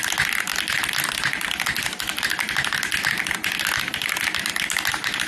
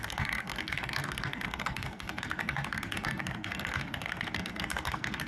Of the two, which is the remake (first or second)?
second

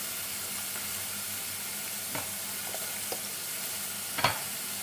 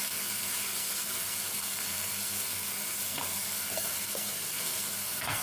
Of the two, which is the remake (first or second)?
second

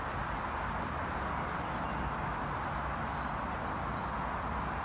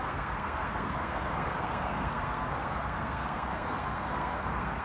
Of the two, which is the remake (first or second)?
second